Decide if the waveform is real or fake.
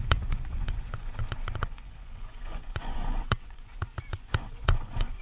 fake